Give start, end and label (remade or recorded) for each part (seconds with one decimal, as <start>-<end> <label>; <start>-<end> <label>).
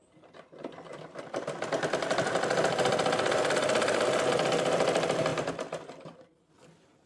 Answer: 0.0-3.5 recorded; 3.5-5.3 remade; 5.3-7.1 recorded